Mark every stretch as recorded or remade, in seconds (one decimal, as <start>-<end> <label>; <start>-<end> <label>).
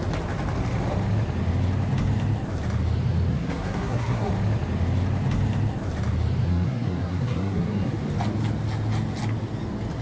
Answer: 0.0-3.3 recorded; 3.3-4.3 remade; 4.3-6.5 recorded; 6.5-8.0 remade; 8.0-10.0 recorded